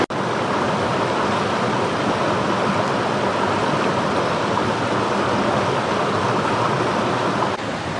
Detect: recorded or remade recorded